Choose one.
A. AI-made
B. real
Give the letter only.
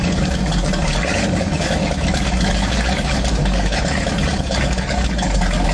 A